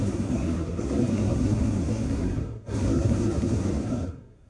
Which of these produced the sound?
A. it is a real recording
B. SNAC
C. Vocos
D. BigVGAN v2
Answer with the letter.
B